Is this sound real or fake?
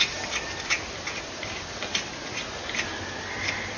real